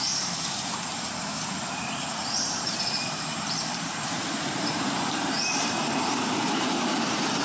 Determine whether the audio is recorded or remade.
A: remade